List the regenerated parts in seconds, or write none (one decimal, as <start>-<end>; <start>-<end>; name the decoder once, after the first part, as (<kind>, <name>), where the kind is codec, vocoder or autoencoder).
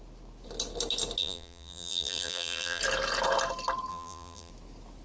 1.2-2.8 (vocoder, BigVGAN v2); 3.9-4.5